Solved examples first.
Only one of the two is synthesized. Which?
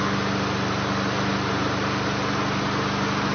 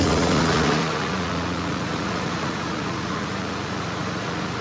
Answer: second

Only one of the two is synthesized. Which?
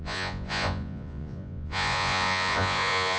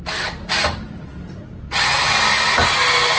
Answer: first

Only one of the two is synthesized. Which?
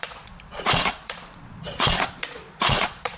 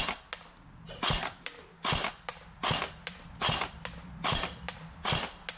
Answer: first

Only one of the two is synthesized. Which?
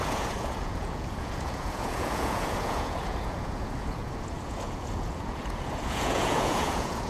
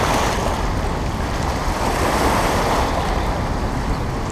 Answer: first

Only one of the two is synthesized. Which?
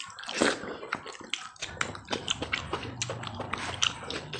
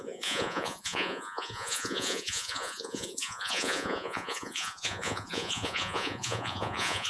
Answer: second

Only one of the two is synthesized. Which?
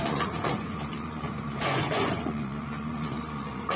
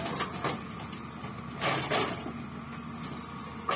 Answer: first